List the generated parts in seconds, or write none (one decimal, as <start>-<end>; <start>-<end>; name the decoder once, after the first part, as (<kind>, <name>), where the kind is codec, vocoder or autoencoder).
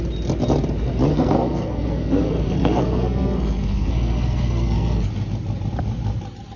1.1-5.1 (codec, SNAC)